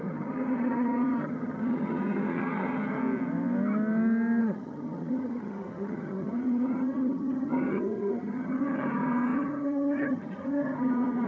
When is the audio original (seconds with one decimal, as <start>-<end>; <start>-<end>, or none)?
3.0-4.4